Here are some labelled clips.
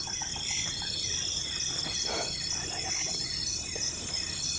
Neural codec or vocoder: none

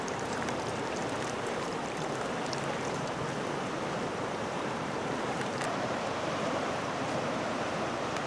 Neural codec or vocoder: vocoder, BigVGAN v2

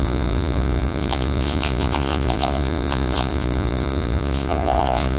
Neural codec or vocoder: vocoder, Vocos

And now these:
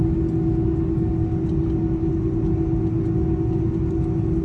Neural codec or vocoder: none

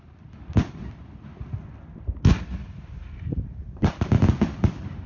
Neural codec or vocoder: none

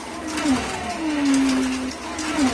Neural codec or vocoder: none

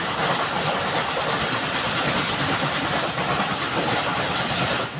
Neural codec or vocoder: none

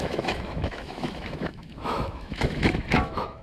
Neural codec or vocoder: autoencoder, DAC-VAE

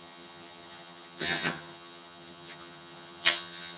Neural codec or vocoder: vocoder, HiFi-GAN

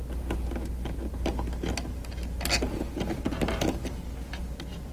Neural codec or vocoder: none